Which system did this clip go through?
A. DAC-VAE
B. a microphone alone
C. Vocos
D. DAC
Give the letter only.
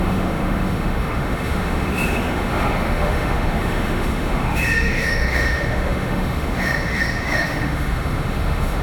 A